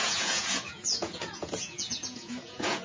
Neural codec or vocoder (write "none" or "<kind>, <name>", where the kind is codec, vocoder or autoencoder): vocoder, Vocos